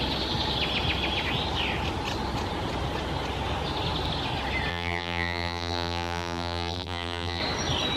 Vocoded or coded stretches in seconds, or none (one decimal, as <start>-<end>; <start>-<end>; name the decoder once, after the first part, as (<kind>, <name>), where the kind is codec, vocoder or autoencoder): 4.7-7.4 (vocoder, BigVGAN v2)